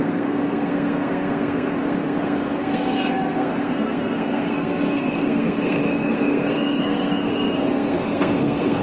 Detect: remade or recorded remade